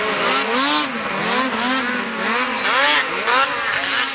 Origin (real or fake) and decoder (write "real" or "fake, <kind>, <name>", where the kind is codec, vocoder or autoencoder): real